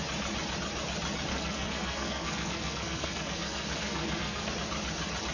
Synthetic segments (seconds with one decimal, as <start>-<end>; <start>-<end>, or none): 1.3-4.5